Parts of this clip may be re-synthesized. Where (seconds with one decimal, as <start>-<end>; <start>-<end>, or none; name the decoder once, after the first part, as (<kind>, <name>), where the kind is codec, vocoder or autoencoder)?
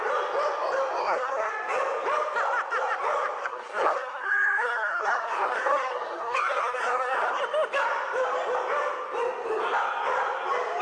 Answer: 1.0-1.5 (codec, SNAC); 3.4-7.4